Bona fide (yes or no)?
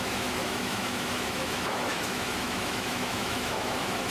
no